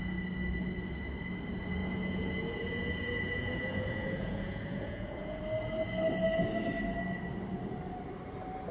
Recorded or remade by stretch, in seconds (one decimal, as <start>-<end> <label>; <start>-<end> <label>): 0.0-1.8 recorded; 1.8-5.4 remade; 5.4-8.7 recorded